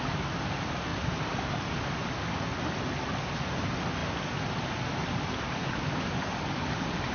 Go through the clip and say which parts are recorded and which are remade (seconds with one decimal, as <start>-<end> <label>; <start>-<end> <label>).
0.0-7.1 recorded

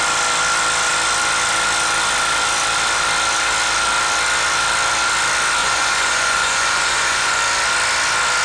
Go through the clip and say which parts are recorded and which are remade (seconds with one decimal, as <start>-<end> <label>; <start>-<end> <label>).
0.0-5.6 recorded; 5.6-7.4 remade; 7.4-8.4 recorded

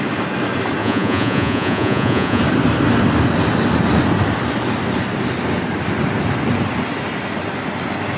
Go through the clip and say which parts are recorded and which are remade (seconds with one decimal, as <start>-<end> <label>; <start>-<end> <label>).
0.0-0.8 recorded; 0.8-2.4 remade; 2.4-8.2 recorded

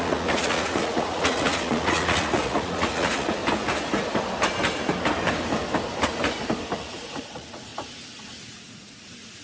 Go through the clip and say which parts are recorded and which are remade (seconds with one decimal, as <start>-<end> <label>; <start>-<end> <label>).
0.0-3.4 remade; 3.4-6.8 recorded; 6.8-7.7 remade; 7.7-8.5 recorded; 8.5-9.4 remade

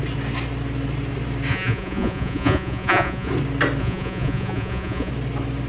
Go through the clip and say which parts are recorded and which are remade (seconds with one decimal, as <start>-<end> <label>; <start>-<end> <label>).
0.0-1.5 recorded; 1.5-3.3 remade; 3.3-3.8 recorded; 3.8-5.1 remade; 5.1-5.7 recorded

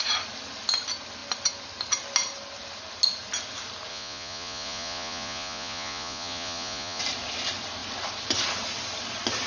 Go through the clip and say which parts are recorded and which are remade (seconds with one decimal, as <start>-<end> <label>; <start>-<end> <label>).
0.0-3.9 recorded; 3.9-7.0 remade; 7.0-9.5 recorded

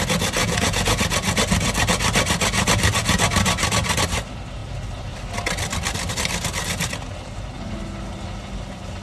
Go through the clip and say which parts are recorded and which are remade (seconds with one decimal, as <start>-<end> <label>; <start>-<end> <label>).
0.0-0.4 recorded; 0.4-1.0 remade; 1.0-9.0 recorded